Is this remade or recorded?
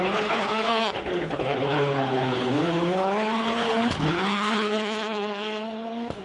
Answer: remade